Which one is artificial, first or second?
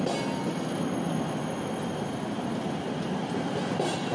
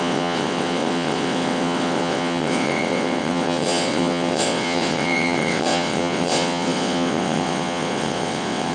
second